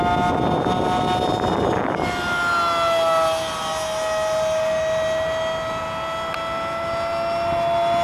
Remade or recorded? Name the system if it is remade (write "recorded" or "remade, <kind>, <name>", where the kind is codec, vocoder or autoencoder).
recorded